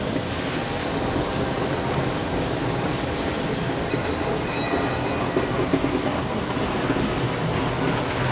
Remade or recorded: recorded